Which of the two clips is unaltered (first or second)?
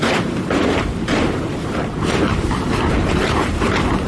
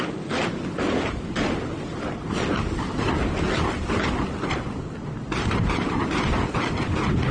second